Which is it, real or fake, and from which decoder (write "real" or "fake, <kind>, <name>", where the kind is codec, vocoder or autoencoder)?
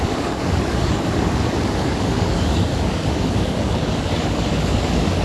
fake, codec, DAC